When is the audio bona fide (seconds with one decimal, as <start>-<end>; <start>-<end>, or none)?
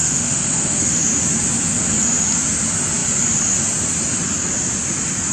1.0-5.3